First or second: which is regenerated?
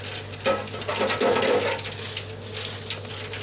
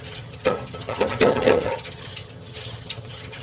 second